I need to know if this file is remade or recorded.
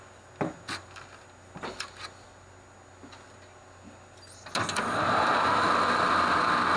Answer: recorded